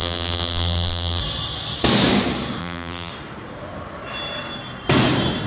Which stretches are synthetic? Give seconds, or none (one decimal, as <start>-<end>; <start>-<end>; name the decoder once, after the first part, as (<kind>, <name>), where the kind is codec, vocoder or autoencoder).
0.0-1.2 (vocoder, BigVGAN v2); 2.6-3.1